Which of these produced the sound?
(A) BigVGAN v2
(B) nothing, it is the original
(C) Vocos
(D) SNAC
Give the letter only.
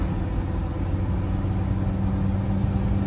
B